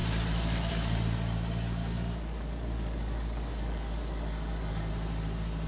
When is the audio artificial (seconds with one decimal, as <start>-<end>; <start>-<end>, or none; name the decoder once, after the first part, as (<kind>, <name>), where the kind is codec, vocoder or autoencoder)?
1.8-4.9 (codec, DAC)